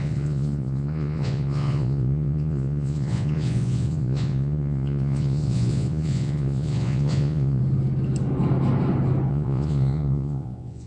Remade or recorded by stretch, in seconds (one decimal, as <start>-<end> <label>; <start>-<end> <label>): 0.0-7.6 remade; 7.6-9.3 recorded; 9.3-10.9 remade